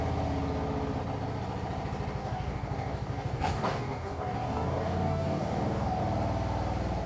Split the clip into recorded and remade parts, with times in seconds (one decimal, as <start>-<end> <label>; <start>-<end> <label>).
0.0-2.2 recorded; 2.2-6.0 remade; 6.0-7.1 recorded